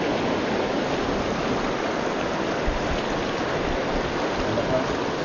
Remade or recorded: recorded